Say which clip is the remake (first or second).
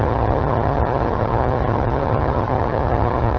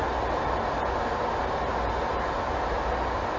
first